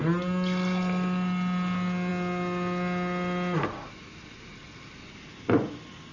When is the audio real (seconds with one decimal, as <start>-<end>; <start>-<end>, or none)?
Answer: 0.0-6.1